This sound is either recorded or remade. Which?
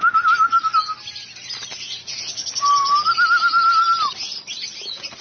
recorded